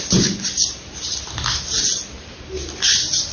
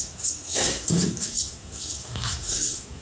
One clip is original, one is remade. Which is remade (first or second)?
second